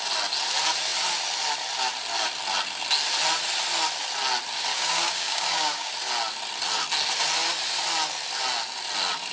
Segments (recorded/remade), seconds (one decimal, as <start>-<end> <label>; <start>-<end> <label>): 0.0-4.7 recorded; 4.7-5.9 remade; 5.9-9.3 recorded